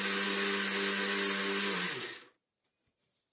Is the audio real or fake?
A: real